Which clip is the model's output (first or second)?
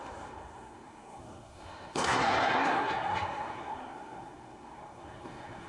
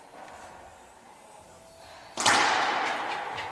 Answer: first